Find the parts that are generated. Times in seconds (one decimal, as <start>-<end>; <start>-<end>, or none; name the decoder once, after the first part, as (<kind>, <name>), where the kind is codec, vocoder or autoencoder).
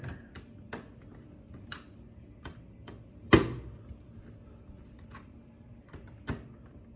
none